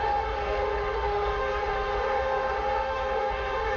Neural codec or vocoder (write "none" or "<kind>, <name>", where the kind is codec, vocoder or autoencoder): autoencoder, DAC-VAE